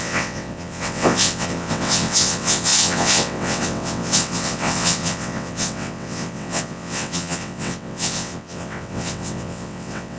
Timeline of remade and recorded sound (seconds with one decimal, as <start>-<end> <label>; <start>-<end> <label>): 0.0-10.2 remade